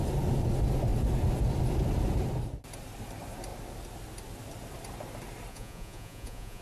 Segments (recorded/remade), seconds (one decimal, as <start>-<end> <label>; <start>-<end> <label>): 0.0-5.5 recorded; 5.5-6.6 remade